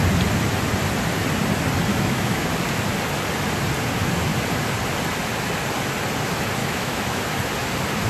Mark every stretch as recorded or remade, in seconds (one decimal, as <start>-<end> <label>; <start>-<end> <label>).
0.0-1.9 recorded; 1.9-2.5 remade; 2.5-6.6 recorded; 6.6-7.2 remade; 7.2-8.1 recorded